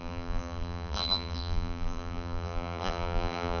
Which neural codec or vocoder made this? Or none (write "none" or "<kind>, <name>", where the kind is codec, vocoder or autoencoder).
vocoder, BigVGAN v2